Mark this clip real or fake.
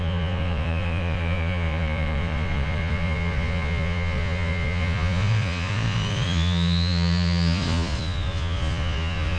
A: fake